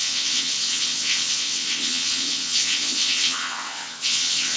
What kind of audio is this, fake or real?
fake